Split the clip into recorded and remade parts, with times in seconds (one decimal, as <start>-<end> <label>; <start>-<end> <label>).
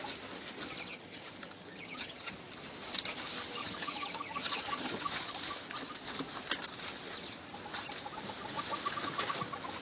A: 0.0-0.9 recorded; 0.9-2.3 remade; 2.3-3.6 recorded; 3.6-5.3 remade; 5.3-9.8 recorded